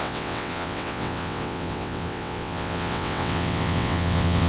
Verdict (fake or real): fake